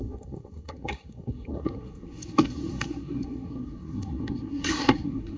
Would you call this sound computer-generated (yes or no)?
yes